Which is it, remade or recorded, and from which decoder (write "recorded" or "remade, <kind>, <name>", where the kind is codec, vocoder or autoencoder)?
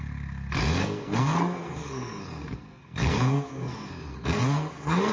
remade, codec, SNAC